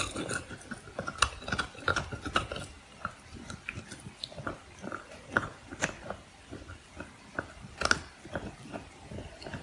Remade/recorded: recorded